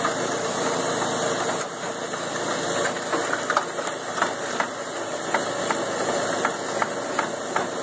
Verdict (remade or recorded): recorded